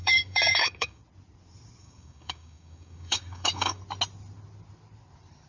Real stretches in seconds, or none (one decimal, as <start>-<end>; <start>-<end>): 1.0-1.8; 3.8-5.5